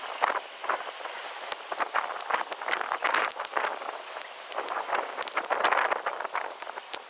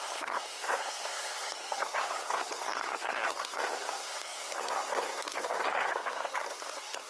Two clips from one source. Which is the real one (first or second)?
first